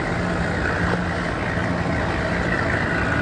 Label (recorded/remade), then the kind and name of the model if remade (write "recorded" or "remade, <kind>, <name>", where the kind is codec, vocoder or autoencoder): recorded